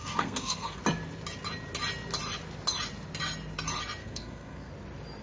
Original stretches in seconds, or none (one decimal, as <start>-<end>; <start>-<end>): 0.8-4.0; 4.7-5.2